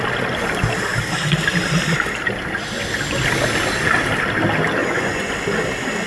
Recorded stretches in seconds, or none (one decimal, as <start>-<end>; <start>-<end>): 0.0-4.8; 5.3-6.1